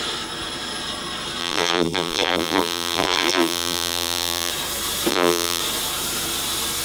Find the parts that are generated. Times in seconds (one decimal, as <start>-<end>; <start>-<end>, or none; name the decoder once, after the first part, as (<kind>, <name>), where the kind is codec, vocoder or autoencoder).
1.4-4.5 (vocoder, BigVGAN v2); 5.1-5.6